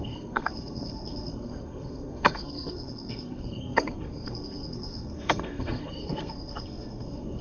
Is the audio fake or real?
fake